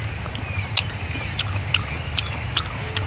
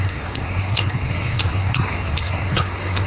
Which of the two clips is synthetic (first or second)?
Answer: second